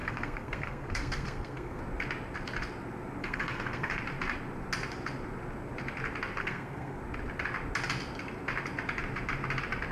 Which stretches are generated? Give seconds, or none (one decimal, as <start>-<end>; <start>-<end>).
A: 0.0-1.8; 3.2-4.0; 6.4-7.0